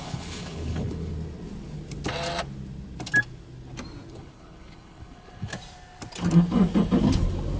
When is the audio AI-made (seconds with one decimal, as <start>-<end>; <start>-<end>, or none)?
0.0-1.1; 4.1-5.5